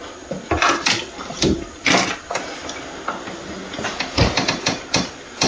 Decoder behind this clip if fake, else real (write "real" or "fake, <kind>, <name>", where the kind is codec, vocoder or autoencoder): real